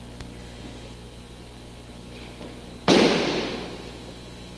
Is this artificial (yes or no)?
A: no